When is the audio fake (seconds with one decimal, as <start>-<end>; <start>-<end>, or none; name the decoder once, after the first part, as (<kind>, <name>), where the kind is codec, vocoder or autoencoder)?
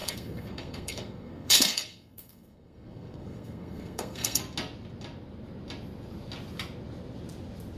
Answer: 0.0-4.4 (codec, SNAC)